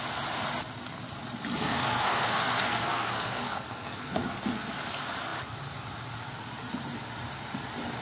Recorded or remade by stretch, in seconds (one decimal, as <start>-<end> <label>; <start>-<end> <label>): 0.0-1.6 recorded; 1.6-4.7 remade; 4.7-8.0 recorded